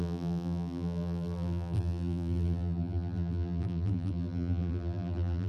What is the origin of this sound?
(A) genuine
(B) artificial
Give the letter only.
B